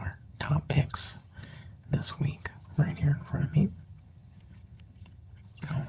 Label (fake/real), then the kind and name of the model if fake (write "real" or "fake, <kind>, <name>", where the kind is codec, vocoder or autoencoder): fake, vocoder, HiFi-GAN